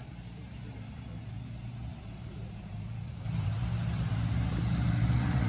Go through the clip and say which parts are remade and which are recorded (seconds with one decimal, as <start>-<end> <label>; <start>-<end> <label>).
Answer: 0.0-5.5 remade